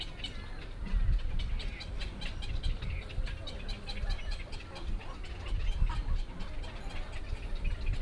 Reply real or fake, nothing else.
real